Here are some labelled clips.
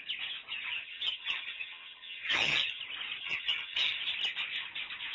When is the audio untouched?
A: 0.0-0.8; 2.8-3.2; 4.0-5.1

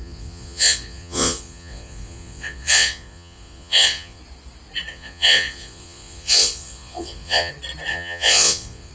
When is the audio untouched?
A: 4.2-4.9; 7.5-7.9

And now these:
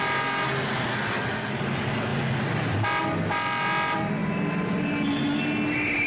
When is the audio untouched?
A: 0.0-0.9; 1.6-6.1

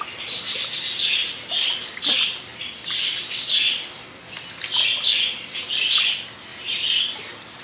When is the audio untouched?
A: 0.0-7.6

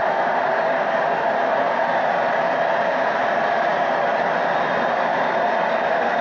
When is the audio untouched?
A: 0.0-6.2

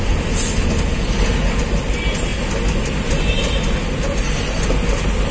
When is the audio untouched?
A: 0.0-5.3

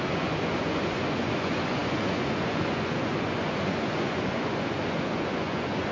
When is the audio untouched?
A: none